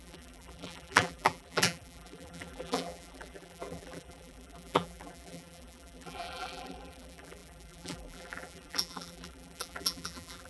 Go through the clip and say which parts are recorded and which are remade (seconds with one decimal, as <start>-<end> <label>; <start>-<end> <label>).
0.0-10.5 remade